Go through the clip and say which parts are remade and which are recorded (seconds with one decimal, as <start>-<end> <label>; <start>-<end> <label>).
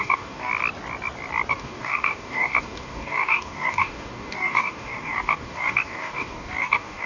0.0-0.5 remade; 0.5-1.5 recorded; 1.5-7.1 remade